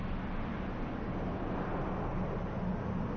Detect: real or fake real